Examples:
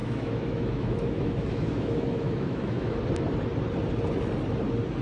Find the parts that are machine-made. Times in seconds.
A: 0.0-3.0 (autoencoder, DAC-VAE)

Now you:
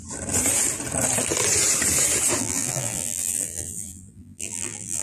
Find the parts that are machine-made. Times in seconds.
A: 2.4-5.0 (vocoder, BigVGAN v2)

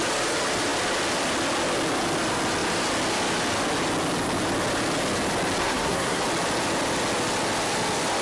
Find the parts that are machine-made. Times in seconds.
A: 5.6-6.2 (codec, SNAC)